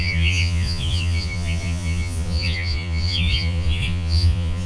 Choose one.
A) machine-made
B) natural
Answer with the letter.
A